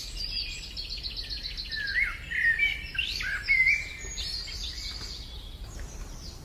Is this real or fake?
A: real